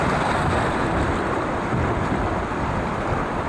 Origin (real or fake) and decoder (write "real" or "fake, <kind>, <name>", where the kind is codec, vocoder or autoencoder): real